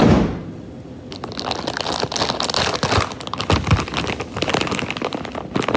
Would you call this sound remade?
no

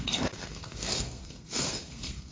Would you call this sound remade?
yes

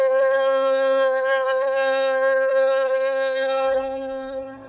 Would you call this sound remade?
yes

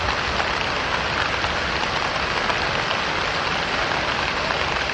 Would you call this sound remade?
no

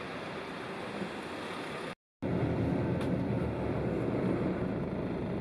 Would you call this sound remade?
no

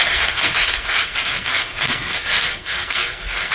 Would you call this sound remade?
yes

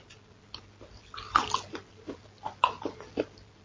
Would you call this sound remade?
no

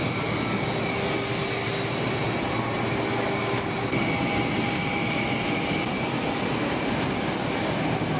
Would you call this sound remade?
no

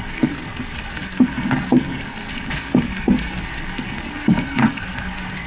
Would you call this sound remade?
yes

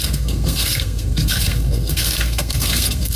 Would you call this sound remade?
yes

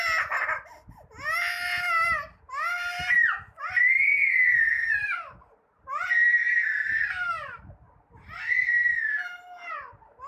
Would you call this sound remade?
no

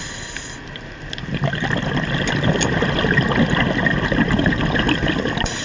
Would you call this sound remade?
no